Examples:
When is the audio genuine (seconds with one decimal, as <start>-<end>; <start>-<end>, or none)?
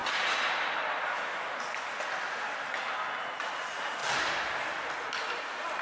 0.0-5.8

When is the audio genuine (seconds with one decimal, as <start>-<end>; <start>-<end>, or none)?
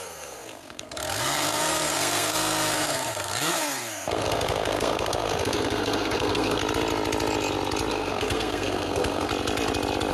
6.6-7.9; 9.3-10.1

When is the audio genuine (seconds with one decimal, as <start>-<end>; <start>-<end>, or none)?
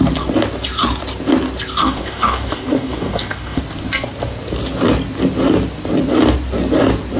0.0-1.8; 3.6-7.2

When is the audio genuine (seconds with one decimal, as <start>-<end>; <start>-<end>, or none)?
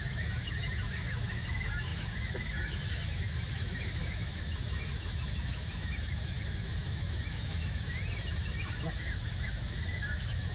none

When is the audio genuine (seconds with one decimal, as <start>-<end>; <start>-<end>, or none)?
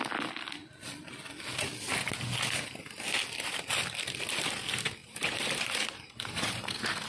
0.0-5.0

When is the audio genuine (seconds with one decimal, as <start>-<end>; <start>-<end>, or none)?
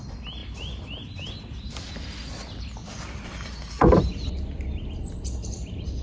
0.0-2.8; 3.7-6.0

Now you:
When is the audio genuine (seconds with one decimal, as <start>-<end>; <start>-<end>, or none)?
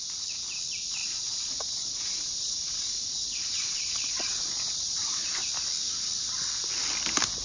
0.0-1.0; 5.4-7.4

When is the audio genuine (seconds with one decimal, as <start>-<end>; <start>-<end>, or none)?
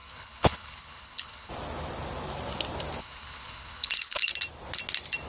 1.5-3.0; 4.3-5.3